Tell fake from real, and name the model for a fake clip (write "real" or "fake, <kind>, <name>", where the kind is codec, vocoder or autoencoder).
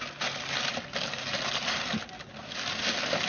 real